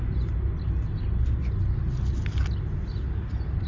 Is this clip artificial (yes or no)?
no